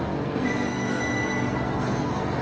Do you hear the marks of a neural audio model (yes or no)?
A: yes